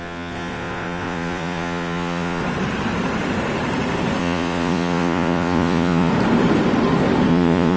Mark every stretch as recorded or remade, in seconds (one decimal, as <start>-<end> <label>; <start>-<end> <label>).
0.0-2.4 remade; 2.4-4.2 recorded; 4.2-6.1 remade; 6.1-7.3 recorded; 7.3-7.8 remade